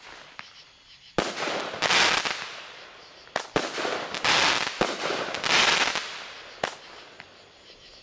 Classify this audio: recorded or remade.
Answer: recorded